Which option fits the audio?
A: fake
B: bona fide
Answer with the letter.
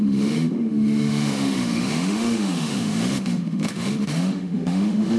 A